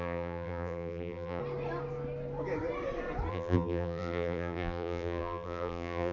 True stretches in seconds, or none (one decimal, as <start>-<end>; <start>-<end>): 1.4-3.3